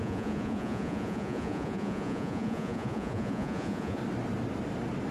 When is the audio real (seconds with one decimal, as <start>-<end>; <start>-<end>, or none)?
4.0-5.1